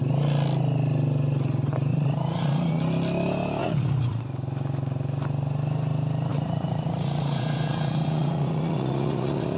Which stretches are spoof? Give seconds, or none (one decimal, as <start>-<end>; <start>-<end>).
1.9-2.8; 3.6-4.2; 6.3-9.6

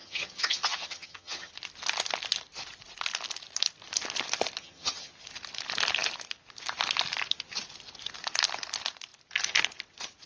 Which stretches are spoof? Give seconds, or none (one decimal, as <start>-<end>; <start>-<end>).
0.0-1.5; 4.6-5.1

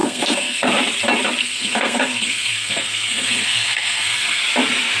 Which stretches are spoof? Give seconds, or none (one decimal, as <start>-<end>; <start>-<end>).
0.0-0.7; 1.4-4.4

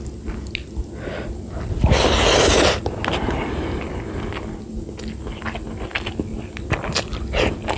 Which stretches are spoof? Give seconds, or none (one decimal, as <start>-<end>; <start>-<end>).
none

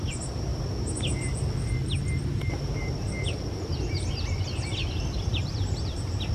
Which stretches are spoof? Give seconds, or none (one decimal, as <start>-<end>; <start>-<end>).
4.8-6.3

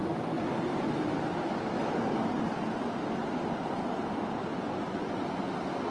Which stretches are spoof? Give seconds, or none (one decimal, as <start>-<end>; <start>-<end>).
0.0-0.6; 4.5-5.2

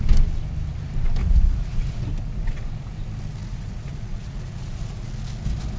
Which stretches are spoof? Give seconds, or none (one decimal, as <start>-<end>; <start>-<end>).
1.2-2.1; 3.4-5.1

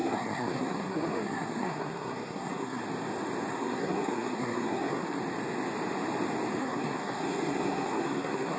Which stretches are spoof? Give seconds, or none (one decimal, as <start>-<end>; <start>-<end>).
0.0-2.8; 3.5-5.2; 6.6-8.6